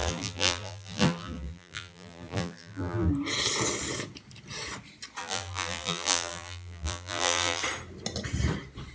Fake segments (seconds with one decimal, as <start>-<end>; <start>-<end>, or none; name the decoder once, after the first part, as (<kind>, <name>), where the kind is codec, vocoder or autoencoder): 0.0-3.1 (vocoder, BigVGAN v2); 5.2-7.6